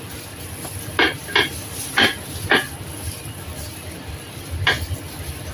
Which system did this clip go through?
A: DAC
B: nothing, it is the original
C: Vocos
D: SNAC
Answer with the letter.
B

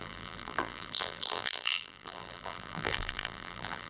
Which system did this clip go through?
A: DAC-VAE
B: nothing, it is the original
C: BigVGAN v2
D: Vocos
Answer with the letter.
C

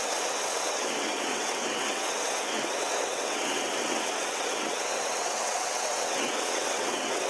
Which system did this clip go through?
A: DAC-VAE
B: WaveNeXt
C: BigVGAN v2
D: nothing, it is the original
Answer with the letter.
B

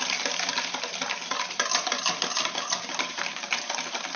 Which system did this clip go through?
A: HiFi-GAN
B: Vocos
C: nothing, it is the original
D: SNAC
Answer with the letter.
C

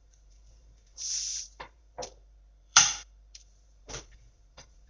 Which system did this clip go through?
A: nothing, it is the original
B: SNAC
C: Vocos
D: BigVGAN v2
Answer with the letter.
D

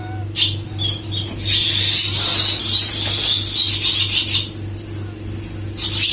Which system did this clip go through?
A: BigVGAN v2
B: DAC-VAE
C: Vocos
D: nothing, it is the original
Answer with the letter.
D